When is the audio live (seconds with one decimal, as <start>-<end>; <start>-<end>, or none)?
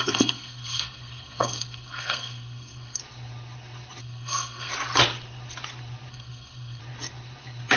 3.0-4.0; 4.7-6.1; 6.8-7.8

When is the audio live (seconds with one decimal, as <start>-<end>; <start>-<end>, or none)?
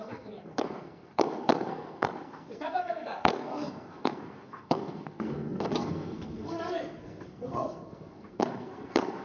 none